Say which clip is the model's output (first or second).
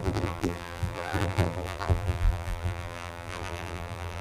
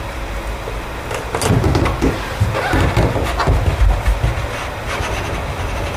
first